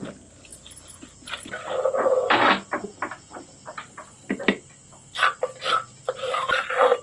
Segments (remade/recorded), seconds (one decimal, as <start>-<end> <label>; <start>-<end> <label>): 0.0-7.0 recorded